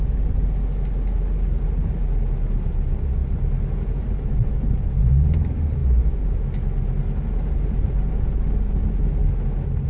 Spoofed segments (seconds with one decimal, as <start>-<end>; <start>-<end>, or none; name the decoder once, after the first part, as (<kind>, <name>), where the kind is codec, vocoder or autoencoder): none